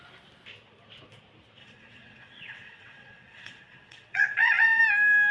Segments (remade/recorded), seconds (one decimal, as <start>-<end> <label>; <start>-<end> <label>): 0.0-1.6 recorded; 1.6-4.8 remade; 4.8-5.3 recorded